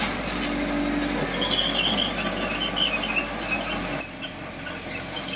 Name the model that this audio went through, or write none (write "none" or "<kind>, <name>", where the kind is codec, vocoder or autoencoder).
none